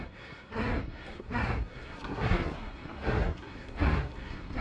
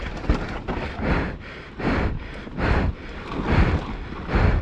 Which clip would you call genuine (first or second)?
second